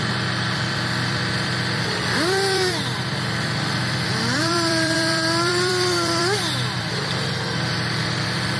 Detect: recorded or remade remade